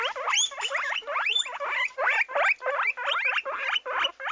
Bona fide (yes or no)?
yes